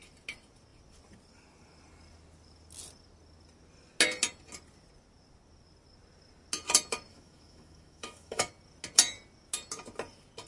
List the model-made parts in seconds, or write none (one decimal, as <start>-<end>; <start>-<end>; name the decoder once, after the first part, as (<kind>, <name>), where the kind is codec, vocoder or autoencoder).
7.1-8.5 (autoencoder, DAC-VAE)